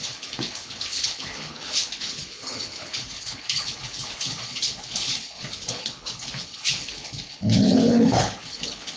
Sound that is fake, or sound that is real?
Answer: fake